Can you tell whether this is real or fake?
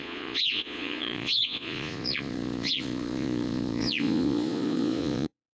fake